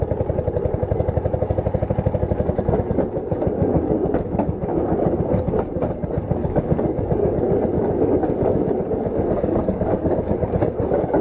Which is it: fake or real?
fake